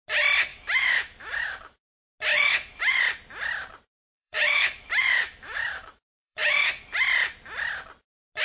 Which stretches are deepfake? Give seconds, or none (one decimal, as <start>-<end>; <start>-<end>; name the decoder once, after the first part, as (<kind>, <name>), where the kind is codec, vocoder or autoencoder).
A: 0.5-1.9 (autoencoder, DAC-VAE); 2.3-3.0; 4.1-6.7

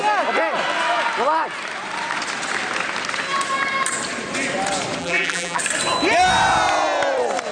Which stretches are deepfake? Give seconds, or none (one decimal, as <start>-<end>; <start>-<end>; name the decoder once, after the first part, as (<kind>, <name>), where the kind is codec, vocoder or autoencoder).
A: 5.0-5.6 (vocoder, BigVGAN v2)

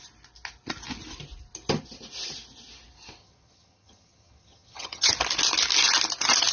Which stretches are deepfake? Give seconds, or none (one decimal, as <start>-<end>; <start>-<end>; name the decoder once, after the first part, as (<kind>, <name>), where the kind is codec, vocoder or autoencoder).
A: 3.2-5.1 (vocoder, HiFi-GAN)

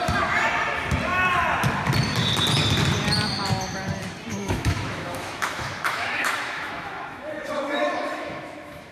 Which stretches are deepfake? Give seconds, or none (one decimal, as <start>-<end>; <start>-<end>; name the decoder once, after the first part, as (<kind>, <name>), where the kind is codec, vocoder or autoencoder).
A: 4.3-8.9 (autoencoder, DAC-VAE)

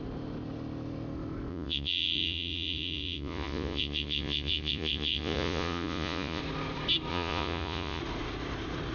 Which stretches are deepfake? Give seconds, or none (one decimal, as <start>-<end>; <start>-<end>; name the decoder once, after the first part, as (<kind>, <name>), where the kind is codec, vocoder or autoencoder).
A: 1.5-6.4 (vocoder, Vocos); 7.1-8.0

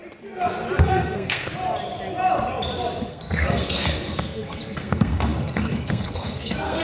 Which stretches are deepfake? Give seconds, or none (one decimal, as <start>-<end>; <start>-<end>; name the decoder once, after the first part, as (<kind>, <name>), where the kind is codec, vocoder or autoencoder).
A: 0.8-1.5 (codec, SNAC); 3.1-6.8

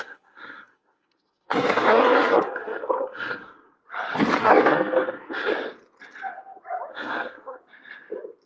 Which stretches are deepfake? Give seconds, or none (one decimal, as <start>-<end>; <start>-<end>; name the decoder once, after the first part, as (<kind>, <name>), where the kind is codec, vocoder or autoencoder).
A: 0.0-3.8 (codec, SNAC); 4.4-5.5; 6.9-7.6